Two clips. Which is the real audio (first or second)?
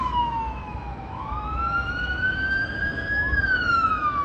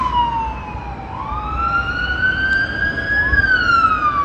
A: second